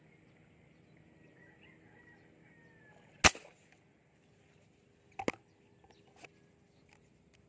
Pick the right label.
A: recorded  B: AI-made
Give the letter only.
A